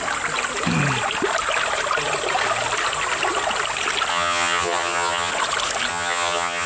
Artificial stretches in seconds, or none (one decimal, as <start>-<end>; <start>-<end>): 4.1-5.3; 5.9-6.7